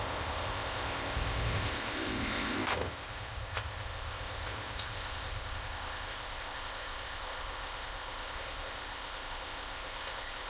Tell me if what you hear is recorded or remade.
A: remade